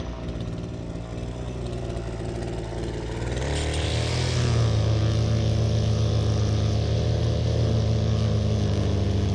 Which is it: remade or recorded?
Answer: recorded